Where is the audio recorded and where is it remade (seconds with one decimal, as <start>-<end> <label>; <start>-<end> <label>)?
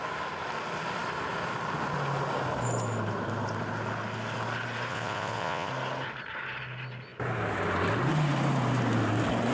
0.0-4.9 recorded; 4.9-5.7 remade; 5.7-9.5 recorded